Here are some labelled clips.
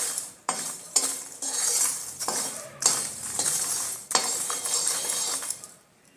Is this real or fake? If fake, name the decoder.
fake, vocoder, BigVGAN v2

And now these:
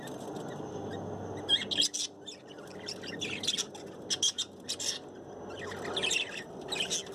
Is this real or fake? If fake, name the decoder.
real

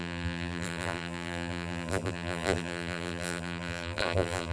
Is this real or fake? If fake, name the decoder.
fake, vocoder, BigVGAN v2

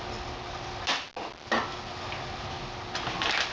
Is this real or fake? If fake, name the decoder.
real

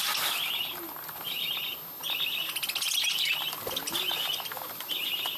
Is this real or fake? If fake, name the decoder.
real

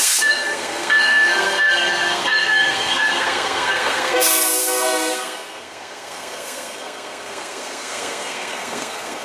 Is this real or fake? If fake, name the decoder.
fake, codec, SNAC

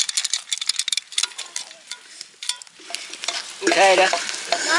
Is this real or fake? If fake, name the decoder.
real